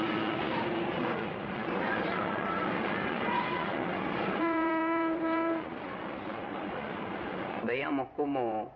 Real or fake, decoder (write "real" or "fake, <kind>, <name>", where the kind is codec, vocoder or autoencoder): fake, vocoder, Vocos